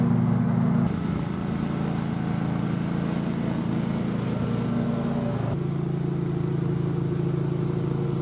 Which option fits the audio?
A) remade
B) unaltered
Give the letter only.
B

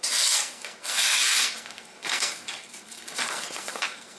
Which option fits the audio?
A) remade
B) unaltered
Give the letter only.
A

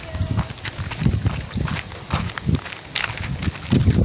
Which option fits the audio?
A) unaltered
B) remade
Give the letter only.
A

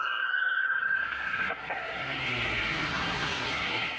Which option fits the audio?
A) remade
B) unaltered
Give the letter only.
A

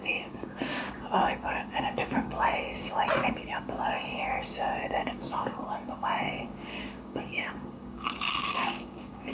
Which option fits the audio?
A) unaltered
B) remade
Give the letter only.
B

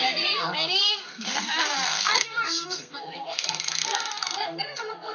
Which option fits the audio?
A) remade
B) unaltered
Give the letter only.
A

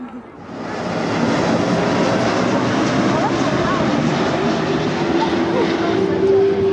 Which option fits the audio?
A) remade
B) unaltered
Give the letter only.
B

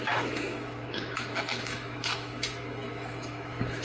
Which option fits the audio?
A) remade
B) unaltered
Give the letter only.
A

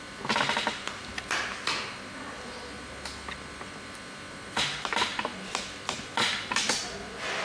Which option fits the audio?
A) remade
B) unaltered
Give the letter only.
B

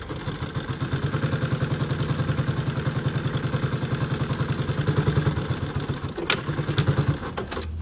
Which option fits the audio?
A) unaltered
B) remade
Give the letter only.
A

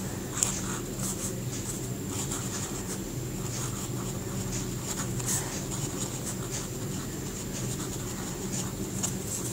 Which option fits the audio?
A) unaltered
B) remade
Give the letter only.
A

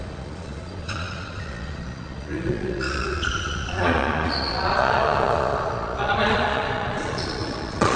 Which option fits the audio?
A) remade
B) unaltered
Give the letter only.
A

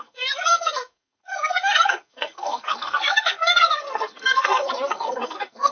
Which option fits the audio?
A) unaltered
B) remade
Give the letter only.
B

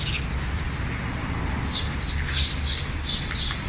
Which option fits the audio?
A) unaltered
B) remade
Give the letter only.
A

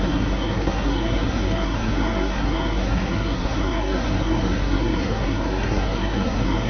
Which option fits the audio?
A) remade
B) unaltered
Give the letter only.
A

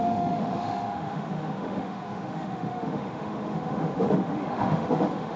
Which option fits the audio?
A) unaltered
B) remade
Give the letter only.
B